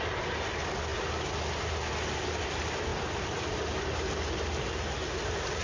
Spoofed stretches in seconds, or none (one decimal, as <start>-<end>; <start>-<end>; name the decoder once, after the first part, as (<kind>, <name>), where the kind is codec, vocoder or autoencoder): none